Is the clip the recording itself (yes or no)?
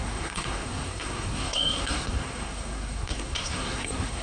no